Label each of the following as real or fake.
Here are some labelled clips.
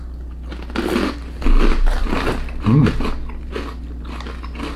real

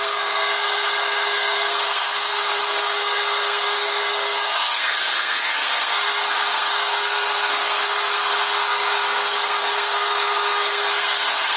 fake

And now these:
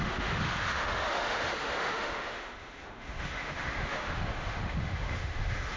fake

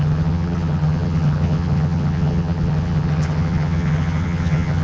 fake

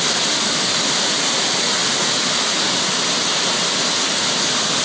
real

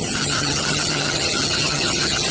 fake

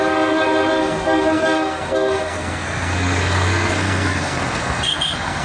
fake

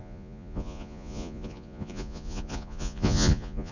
fake